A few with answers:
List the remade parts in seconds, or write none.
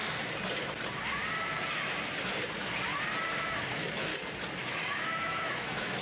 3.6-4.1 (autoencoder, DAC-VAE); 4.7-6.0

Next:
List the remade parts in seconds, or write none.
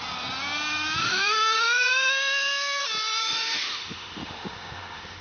1.0-2.8 (autoencoder, DAC-VAE); 3.2-5.2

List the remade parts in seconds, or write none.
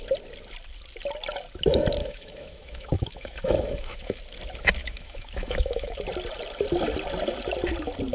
2.0-4.2 (autoencoder, DAC-VAE); 4.8-6.0